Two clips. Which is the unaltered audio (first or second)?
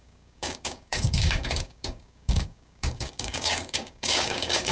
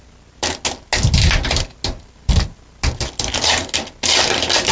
second